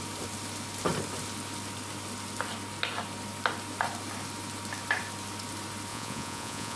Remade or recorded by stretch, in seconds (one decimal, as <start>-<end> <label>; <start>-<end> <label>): 0.0-5.9 recorded; 5.9-6.8 remade